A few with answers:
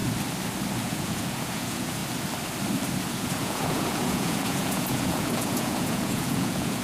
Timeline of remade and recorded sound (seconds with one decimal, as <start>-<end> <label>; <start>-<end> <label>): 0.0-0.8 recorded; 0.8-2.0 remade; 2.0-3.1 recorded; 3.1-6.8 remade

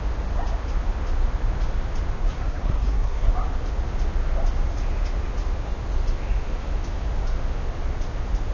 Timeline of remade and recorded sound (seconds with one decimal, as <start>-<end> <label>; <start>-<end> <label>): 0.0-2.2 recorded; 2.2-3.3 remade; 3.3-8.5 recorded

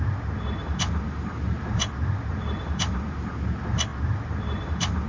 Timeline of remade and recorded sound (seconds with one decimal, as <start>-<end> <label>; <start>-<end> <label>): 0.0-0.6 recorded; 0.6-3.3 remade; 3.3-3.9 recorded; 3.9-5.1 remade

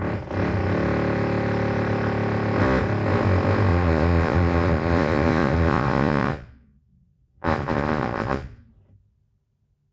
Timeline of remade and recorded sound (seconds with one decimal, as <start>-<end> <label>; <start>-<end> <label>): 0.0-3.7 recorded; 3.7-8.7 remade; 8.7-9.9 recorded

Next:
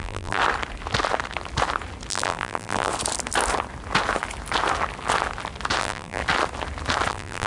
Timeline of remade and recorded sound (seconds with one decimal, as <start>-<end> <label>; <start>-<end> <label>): 0.0-0.4 remade; 0.4-2.1 recorded; 2.1-2.9 remade; 2.9-5.8 recorded; 5.8-6.2 remade; 6.2-7.1 recorded; 7.1-7.5 remade